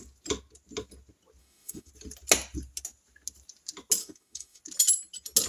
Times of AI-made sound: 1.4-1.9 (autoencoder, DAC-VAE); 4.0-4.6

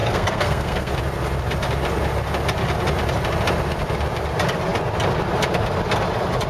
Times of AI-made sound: 0.0-0.9 (codec, SNAC)

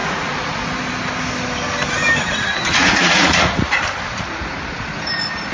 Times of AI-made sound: 0.0-0.6 (vocoder, Vocos); 2.6-3.7

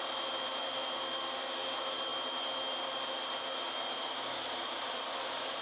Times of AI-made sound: none